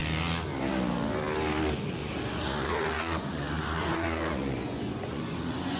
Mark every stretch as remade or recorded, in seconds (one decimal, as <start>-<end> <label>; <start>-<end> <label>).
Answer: 0.0-2.0 recorded; 2.0-5.8 remade